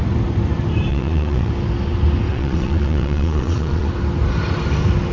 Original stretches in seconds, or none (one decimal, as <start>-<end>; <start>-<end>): 0.0-0.9; 1.5-2.3; 3.9-5.1